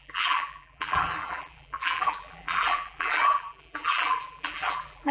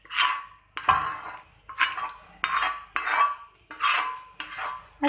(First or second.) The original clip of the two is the second